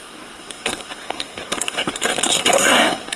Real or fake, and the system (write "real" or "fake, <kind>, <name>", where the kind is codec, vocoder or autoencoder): fake, codec, SNAC